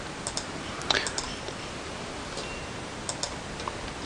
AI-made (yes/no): no